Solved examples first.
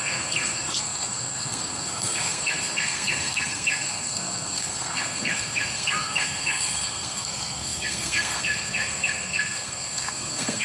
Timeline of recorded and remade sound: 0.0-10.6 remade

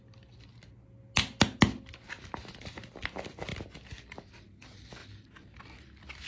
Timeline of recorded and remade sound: 0.0-6.3 recorded

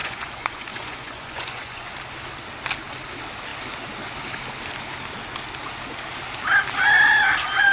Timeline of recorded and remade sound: 0.0-1.9 remade; 1.9-7.7 recorded

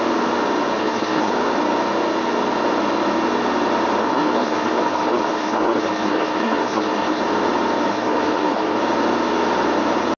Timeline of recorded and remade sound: 0.0-0.8 recorded; 0.8-1.3 remade; 1.3-4.0 recorded; 4.0-7.2 remade; 7.2-7.9 recorded; 7.9-8.8 remade; 8.8-10.2 recorded